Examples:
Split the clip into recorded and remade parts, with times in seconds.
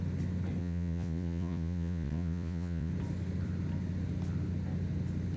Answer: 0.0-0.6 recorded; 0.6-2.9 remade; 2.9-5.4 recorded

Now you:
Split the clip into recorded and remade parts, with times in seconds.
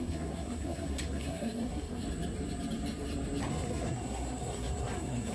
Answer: 0.0-2.0 remade; 2.0-3.5 recorded; 3.5-5.3 remade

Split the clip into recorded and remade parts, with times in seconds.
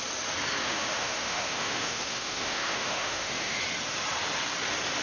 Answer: 0.0-0.6 recorded; 0.6-3.6 remade; 3.6-5.0 recorded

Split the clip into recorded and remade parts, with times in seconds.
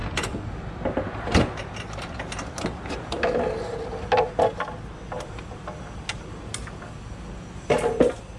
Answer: 0.0-8.4 recorded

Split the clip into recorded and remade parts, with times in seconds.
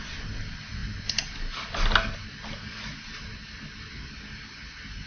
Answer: 0.0-5.1 recorded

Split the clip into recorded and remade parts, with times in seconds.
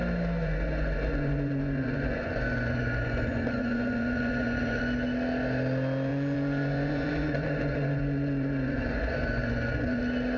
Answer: 0.0-0.4 recorded; 0.4-4.8 remade; 4.8-6.1 recorded; 6.1-10.0 remade; 10.0-10.4 recorded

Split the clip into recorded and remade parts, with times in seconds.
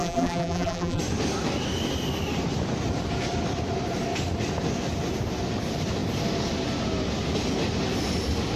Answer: 0.0-1.0 remade; 1.0-8.6 recorded